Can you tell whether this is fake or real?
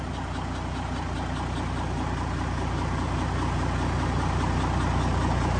real